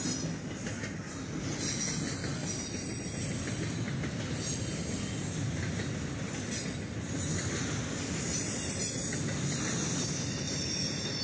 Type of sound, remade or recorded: recorded